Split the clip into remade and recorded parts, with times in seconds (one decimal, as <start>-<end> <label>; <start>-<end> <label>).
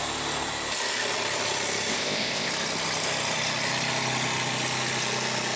0.0-1.9 recorded; 1.9-2.5 remade; 2.5-5.6 recorded